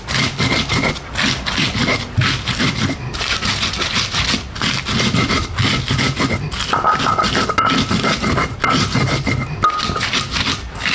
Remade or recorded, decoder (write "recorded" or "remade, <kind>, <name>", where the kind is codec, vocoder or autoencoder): recorded